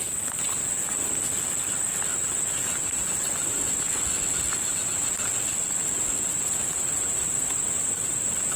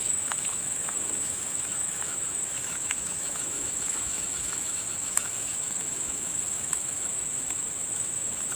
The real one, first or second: first